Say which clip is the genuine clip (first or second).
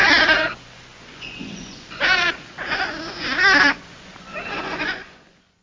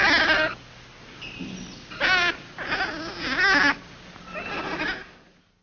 second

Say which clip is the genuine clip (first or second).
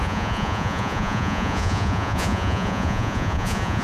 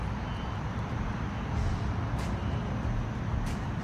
second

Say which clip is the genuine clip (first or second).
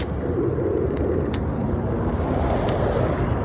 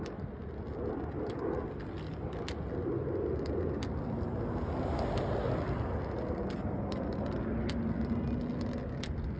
second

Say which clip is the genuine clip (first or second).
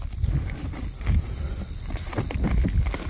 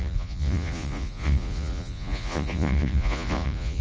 first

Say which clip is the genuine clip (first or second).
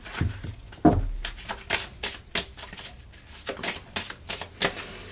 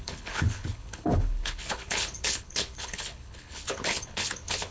first